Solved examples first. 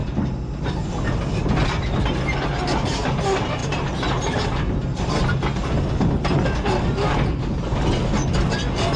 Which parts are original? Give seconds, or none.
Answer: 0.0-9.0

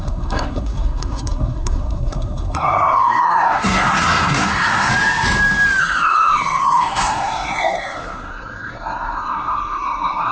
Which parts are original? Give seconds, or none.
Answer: 4.9-5.8

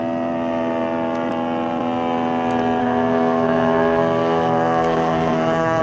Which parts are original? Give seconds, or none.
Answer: 0.0-2.8

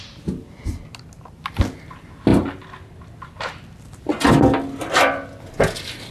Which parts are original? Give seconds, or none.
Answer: 0.0-6.1

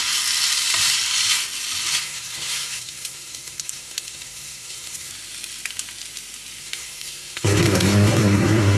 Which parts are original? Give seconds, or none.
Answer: 0.0-2.0; 5.1-6.6